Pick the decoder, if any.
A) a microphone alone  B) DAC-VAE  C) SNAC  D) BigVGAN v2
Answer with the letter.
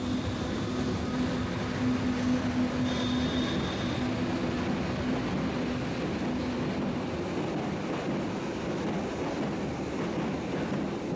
A